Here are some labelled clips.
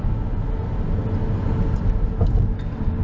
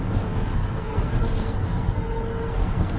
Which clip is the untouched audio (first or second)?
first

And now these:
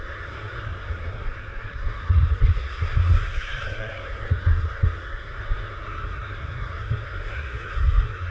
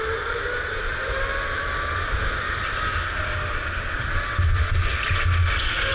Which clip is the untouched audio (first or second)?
second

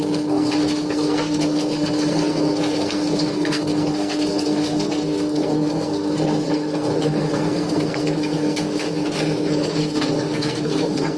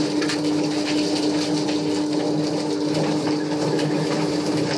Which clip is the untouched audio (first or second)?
second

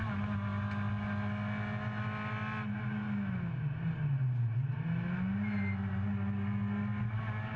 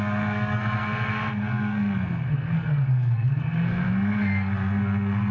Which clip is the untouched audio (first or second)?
first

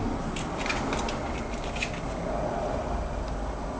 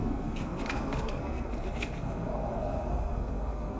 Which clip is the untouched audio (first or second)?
first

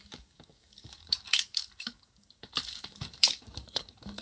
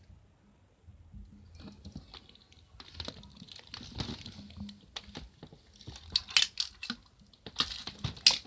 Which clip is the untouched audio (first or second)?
second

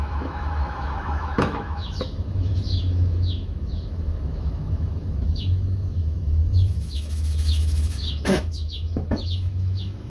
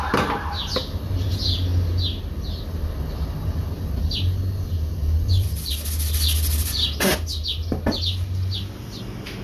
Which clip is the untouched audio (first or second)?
second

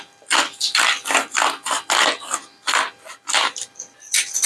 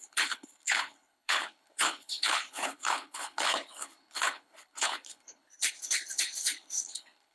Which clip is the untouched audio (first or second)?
first